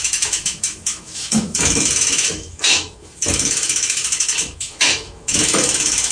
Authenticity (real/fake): fake